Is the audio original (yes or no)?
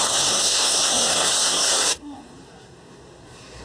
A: no